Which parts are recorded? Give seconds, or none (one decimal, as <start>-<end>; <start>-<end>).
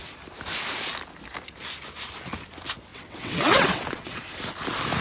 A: 0.0-2.9; 4.2-5.0